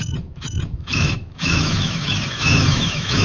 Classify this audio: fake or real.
fake